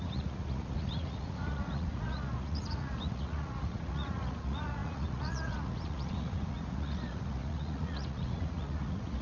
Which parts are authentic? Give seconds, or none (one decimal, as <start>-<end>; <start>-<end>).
none